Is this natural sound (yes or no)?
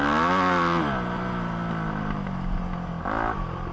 yes